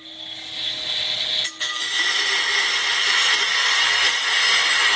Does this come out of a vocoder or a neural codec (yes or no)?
no